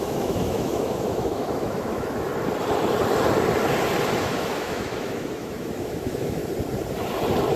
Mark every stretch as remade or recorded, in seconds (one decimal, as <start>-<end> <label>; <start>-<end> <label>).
0.0-2.3 remade; 2.3-4.2 recorded; 4.2-6.4 remade; 6.4-7.6 recorded